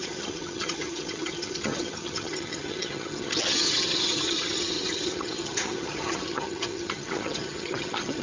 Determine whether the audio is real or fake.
fake